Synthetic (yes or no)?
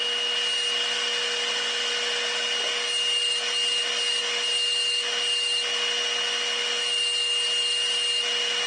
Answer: no